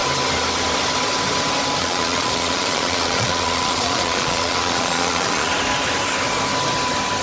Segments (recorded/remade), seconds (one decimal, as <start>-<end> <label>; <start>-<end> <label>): 0.0-1.8 recorded; 1.8-5.5 remade; 5.5-7.2 recorded